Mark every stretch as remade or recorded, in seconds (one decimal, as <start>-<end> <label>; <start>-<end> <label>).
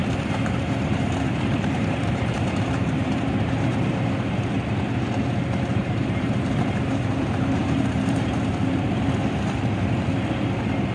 0.0-4.4 remade; 4.4-5.7 recorded; 5.7-9.1 remade; 9.1-10.9 recorded